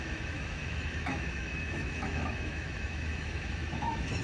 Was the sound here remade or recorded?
remade